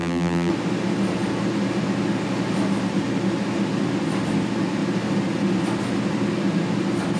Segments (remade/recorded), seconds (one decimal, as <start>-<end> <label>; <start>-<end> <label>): 0.0-0.5 remade; 0.5-7.2 recorded